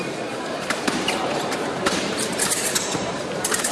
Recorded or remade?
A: remade